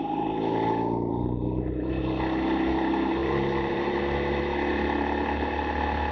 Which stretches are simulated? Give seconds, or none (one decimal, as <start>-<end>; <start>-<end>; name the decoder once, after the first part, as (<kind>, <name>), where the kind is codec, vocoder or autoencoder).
1.1-2.0 (vocoder, BigVGAN v2); 3.2-4.0

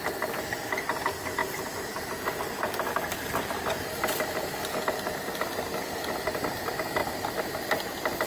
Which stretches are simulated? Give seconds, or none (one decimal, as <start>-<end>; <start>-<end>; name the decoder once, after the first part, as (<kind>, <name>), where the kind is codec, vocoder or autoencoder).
1.4-5.6 (vocoder, BigVGAN v2); 7.0-7.7

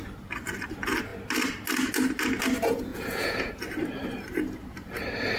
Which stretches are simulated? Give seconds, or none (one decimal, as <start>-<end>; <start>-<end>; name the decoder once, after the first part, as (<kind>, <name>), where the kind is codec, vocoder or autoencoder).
2.9-3.5 (vocoder, Vocos)

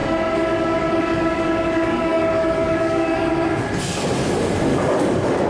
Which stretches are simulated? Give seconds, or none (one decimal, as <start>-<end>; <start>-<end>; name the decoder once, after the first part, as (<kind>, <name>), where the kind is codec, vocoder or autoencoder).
0.0-3.3 (codec, DAC); 4.7-5.5

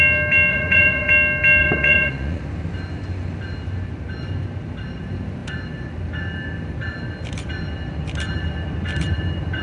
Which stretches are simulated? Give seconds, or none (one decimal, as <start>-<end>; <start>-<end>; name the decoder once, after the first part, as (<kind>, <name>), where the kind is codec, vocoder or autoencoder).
0.5-1.1 (vocoder, Vocos); 1.6-2.4

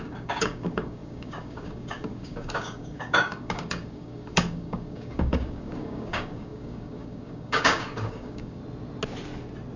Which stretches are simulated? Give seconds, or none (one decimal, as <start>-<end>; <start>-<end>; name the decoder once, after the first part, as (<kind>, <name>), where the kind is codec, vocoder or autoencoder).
0.0-8.6 (codec, DAC)

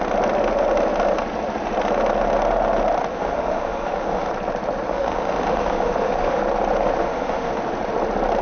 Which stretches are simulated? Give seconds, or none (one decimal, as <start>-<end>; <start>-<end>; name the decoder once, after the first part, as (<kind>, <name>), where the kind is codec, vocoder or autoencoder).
3.1-4.3 (autoencoder, DAC-VAE); 4.9-6.4; 7.0-7.5